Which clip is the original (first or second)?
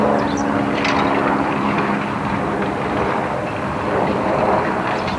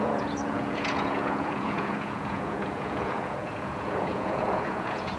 first